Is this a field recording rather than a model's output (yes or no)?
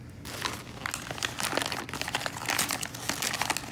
yes